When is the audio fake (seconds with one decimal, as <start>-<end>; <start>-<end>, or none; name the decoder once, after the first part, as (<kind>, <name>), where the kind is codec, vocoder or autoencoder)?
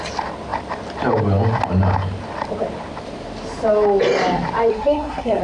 4.7-5.4 (codec, SNAC)